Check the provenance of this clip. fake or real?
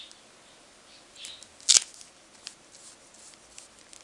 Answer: real